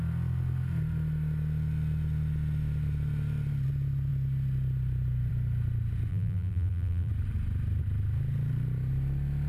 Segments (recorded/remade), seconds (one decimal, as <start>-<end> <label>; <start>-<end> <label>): 0.0-6.1 recorded; 6.1-7.1 remade; 7.1-9.5 recorded